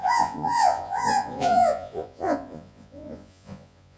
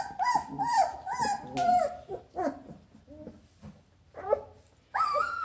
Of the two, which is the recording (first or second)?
second